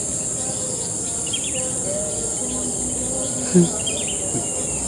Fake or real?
real